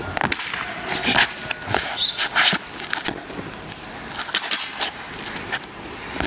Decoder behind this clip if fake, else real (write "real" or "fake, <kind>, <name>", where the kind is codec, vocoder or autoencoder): real